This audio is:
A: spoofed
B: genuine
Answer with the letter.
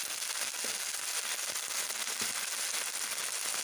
B